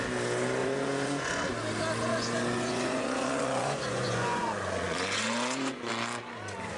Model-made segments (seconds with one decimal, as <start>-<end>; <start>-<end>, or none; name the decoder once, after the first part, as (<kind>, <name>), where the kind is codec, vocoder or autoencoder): 0.6-1.5 (vocoder, Vocos); 2.1-5.9